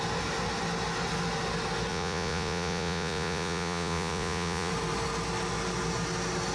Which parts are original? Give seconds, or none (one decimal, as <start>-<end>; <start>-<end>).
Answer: 0.0-1.9; 4.7-6.5

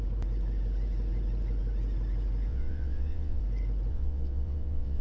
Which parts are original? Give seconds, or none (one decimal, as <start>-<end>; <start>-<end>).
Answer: 0.0-2.5; 3.4-3.9

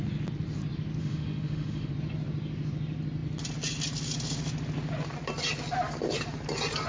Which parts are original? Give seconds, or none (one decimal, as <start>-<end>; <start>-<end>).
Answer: 0.0-1.0; 1.9-6.9

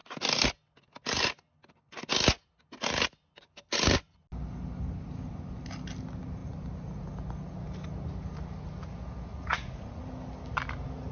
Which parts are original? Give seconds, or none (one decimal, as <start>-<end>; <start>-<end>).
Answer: 0.0-9.3; 10.0-11.1

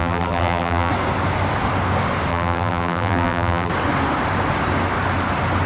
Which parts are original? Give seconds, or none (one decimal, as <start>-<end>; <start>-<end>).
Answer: 0.9-2.3; 3.7-5.7

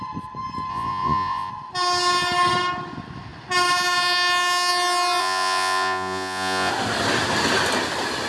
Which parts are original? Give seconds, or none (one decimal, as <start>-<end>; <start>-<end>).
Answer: 0.0-0.7; 1.5-5.2; 6.7-8.3